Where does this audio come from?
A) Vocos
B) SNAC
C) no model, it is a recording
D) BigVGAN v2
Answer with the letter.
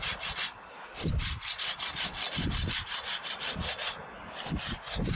C